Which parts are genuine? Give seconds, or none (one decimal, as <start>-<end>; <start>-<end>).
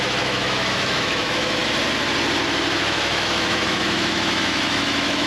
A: 1.6-2.8